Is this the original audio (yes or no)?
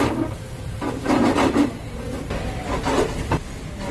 yes